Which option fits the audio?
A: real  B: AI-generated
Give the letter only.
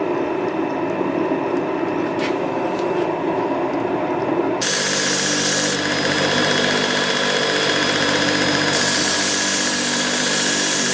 B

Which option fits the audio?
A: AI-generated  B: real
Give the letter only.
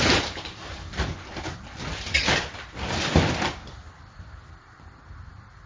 A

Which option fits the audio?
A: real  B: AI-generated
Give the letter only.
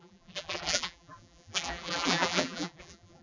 B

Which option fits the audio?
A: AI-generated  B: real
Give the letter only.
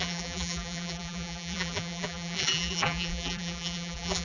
A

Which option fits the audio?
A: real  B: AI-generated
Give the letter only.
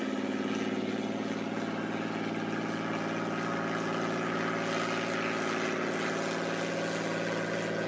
A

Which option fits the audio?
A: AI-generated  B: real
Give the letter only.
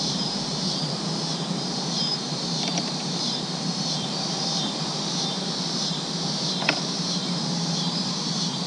A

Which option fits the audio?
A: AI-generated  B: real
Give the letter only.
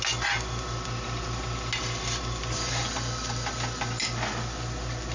B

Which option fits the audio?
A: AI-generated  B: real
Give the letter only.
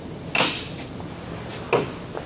B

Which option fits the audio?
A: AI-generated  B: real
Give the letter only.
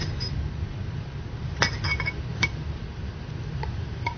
A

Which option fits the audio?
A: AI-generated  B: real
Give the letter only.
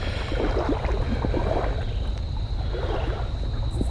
B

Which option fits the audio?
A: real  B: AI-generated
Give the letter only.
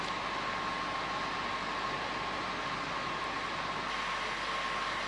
A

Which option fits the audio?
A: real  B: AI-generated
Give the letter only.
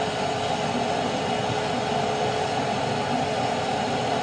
A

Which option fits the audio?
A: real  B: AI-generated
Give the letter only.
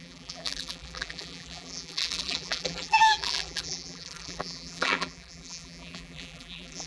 B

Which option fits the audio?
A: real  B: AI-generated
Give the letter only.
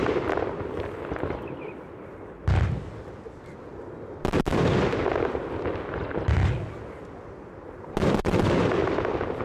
A